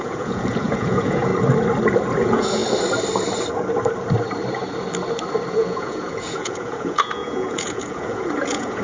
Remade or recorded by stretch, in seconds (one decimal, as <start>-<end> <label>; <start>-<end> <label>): 0.0-1.3 remade; 1.3-2.2 recorded; 2.2-2.6 remade; 2.6-5.5 recorded; 5.5-8.8 remade